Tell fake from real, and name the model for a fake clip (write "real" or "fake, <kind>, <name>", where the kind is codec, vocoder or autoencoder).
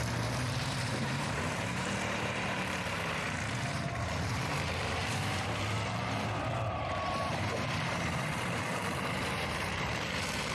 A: fake, vocoder, BigVGAN v2